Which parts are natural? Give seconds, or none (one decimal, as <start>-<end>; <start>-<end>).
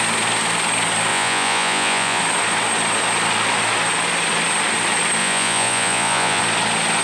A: 0.0-1.1; 2.2-5.2; 6.4-7.0